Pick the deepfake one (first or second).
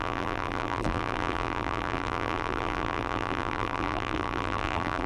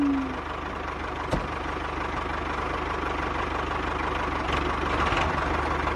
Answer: first